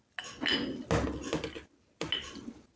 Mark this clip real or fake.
real